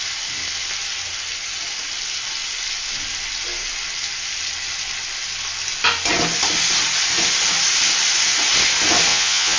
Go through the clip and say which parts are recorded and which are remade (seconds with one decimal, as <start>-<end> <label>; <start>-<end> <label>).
0.0-9.1 recorded; 9.1-9.6 remade